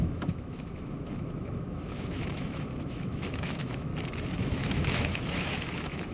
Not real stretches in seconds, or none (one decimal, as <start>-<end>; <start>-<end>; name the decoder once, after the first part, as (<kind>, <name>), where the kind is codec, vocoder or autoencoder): 0.0-3.9 (autoencoder, DAC-VAE); 4.4-6.1